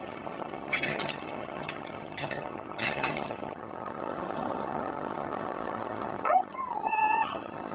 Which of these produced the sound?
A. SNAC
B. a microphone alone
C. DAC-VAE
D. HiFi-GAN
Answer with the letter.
D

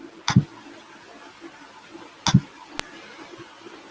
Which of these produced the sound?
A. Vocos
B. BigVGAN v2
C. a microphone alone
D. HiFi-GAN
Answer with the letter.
C